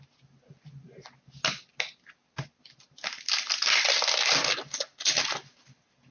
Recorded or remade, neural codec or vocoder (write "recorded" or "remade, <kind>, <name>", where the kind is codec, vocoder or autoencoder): recorded